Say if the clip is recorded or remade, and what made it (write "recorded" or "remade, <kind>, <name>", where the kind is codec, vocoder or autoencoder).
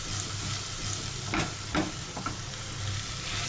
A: recorded